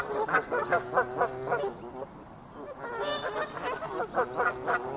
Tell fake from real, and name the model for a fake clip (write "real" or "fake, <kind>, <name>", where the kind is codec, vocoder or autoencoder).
real